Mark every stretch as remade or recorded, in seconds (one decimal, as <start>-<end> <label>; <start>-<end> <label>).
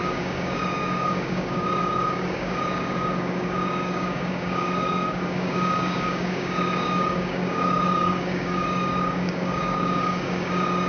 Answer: 0.0-10.9 remade